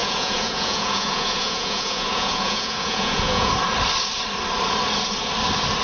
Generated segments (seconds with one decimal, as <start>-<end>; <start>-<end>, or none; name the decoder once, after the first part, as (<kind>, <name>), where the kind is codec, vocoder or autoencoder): 0.0-3.5 (vocoder, Vocos)